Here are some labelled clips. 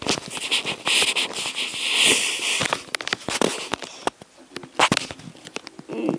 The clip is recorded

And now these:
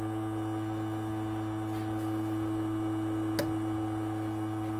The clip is recorded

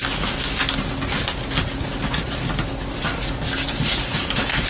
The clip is recorded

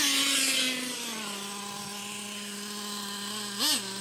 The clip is recorded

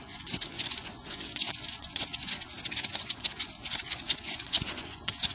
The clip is remade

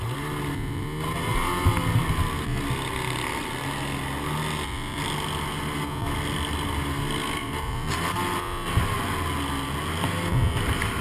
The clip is recorded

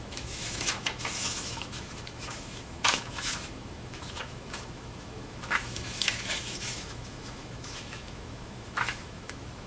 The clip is remade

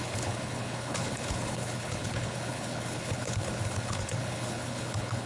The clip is remade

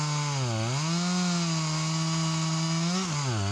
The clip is recorded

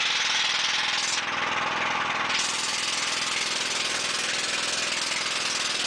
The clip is recorded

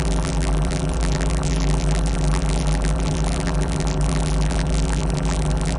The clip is remade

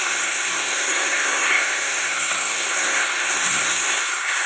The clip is remade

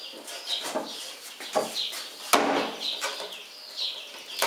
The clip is recorded